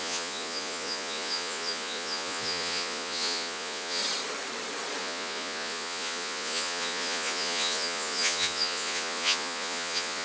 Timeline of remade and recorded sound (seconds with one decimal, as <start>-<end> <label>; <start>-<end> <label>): 0.0-4.0 remade; 4.0-5.0 recorded; 5.0-10.2 remade

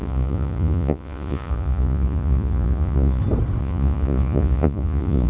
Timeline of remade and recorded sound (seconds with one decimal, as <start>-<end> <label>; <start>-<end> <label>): 0.0-3.2 remade; 3.2-3.6 recorded; 3.6-5.3 remade

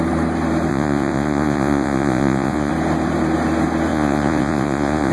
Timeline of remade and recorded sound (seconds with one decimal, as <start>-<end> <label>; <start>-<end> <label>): 0.0-0.7 recorded; 0.7-2.7 remade; 2.7-3.9 recorded; 3.9-5.1 remade

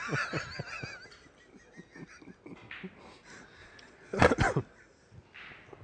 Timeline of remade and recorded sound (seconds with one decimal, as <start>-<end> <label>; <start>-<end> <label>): 0.0-3.6 recorded; 3.6-4.2 remade; 4.2-5.8 recorded

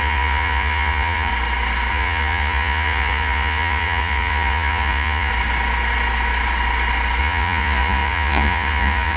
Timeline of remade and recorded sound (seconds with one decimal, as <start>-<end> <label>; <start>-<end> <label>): 0.0-1.3 remade; 1.3-1.9 recorded; 1.9-5.3 remade; 5.3-7.2 recorded; 7.2-9.2 remade